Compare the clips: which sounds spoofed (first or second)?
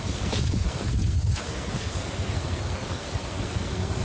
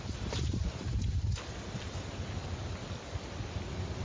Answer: first